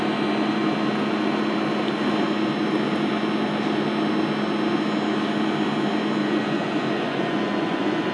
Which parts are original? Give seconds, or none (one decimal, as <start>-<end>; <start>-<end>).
0.0-6.2